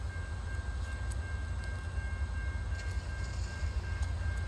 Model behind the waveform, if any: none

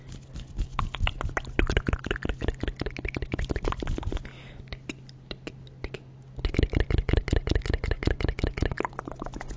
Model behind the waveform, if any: none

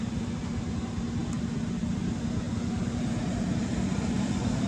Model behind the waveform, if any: none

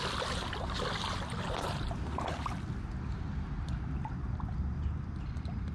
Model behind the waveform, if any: none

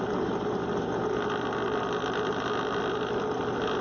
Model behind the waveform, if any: none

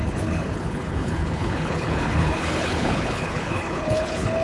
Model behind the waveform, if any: codec, HILCodec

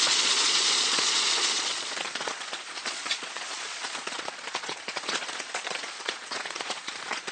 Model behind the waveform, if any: vocoder, Vocos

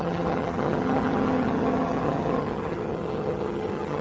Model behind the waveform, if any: vocoder, HiFi-GAN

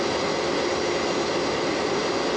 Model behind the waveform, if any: none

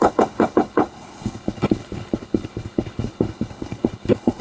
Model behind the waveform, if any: codec, HILCodec